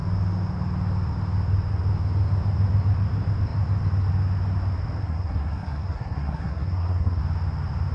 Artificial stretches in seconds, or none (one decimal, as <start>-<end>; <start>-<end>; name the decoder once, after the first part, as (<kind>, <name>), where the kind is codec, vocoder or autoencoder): 5.0-7.2 (codec, SNAC)